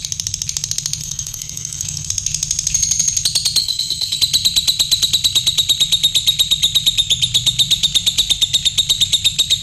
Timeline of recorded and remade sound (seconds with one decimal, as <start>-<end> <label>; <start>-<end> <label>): 0.0-1.0 recorded; 1.0-2.1 remade; 2.1-3.6 recorded; 3.6-4.2 remade; 4.2-9.6 recorded